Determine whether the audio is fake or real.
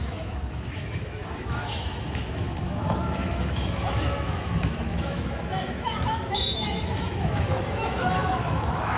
fake